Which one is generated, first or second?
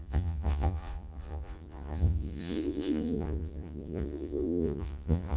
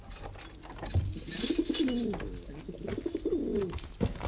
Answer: first